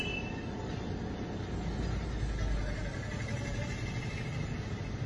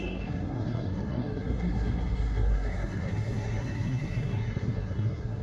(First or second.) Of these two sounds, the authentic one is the first